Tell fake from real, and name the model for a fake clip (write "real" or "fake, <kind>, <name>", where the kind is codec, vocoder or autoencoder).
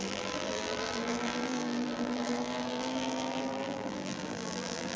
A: fake, vocoder, BigVGAN v2